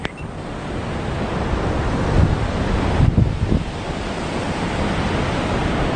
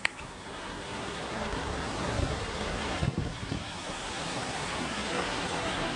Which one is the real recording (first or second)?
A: first